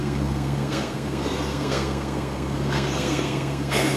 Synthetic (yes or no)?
yes